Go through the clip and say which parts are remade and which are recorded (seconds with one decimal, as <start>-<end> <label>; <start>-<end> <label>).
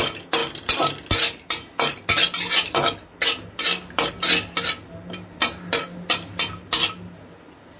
0.0-7.8 recorded